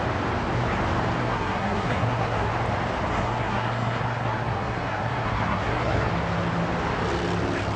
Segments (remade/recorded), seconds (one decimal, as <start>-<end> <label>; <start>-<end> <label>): 0.0-1.2 recorded; 1.2-2.5 remade; 2.5-3.1 recorded; 3.1-6.1 remade; 6.1-7.8 recorded